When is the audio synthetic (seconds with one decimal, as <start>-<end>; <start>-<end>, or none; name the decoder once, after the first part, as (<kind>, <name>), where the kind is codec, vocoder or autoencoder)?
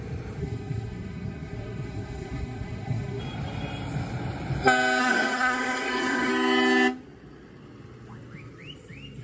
0.4-3.2 (codec, SNAC); 5.0-6.3